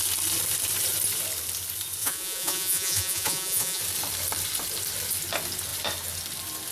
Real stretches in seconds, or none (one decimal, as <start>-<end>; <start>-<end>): 0.0-2.0; 3.8-6.7